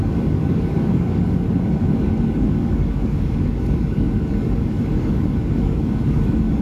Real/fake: fake